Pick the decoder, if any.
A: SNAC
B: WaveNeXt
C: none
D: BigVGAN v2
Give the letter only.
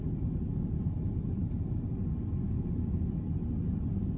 C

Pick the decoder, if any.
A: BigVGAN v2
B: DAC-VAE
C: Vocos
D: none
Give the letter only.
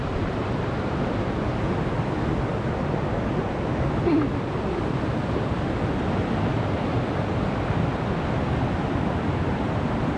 D